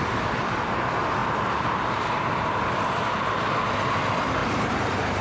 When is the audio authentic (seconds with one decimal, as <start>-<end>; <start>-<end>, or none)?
0.0-1.2; 3.7-4.4